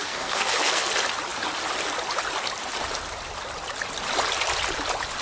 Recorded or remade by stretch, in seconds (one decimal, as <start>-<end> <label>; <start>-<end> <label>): 0.0-0.9 remade; 0.9-5.2 recorded